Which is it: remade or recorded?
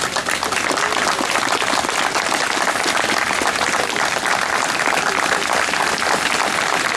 recorded